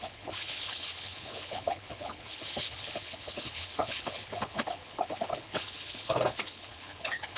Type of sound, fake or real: fake